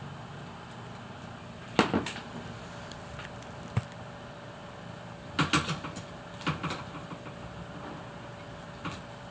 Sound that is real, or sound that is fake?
real